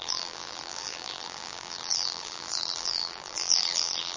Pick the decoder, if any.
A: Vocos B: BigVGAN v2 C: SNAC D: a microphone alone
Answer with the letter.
B